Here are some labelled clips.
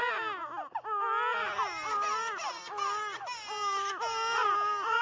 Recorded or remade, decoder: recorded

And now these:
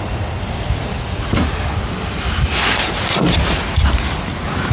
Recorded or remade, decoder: recorded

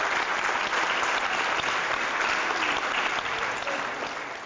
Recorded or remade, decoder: recorded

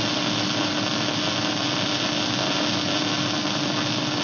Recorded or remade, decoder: recorded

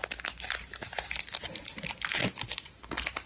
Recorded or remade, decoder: recorded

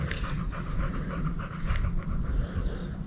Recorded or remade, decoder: recorded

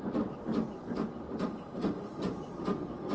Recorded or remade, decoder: recorded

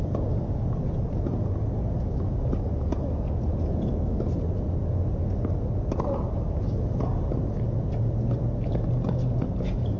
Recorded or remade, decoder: recorded